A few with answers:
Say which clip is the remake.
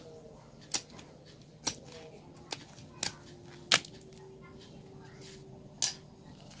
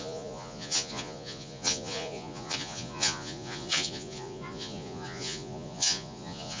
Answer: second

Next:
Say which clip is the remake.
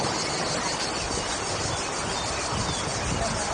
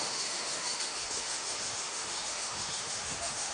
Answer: second